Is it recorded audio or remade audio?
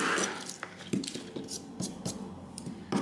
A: recorded